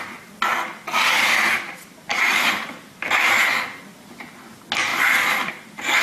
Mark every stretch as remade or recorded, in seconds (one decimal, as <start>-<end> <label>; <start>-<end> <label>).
0.0-2.1 recorded; 2.1-3.5 remade; 3.5-6.0 recorded